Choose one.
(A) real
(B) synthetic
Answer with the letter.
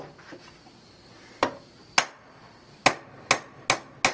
A